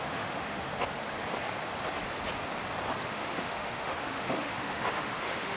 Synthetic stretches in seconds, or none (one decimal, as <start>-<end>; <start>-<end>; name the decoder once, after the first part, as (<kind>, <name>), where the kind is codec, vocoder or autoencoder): 0.0-0.7 (autoencoder, DAC-VAE); 3.1-5.6